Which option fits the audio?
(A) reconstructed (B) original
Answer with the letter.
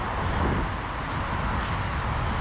B